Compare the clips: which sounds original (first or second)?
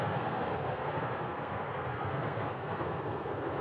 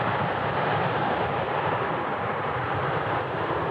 second